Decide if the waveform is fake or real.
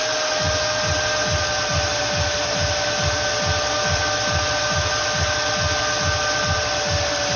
real